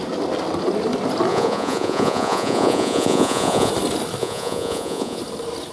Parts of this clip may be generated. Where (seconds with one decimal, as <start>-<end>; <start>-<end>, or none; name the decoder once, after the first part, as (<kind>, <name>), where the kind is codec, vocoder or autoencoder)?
1.3-3.7 (vocoder, Vocos); 4.2-5.2